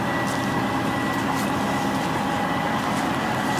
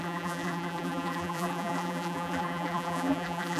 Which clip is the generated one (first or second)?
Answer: second